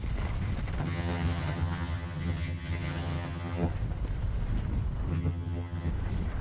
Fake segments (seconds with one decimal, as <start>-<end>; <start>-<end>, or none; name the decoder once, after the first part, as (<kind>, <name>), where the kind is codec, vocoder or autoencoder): 0.8-3.7 (vocoder, HiFi-GAN); 5.1-5.9